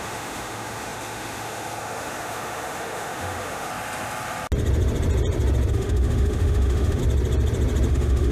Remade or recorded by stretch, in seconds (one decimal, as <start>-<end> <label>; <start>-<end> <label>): 0.0-3.7 remade; 3.7-5.7 recorded; 5.7-7.0 remade; 7.0-7.9 recorded; 7.9-8.3 remade